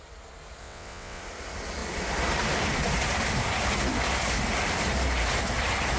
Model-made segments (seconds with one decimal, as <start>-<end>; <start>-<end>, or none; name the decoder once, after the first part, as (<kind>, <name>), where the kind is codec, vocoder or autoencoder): 0.6-1.2 (vocoder, WaveNeXt)